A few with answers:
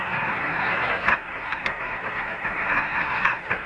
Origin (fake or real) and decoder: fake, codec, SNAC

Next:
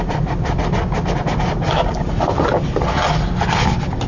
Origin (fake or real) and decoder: fake, vocoder, BigVGAN v2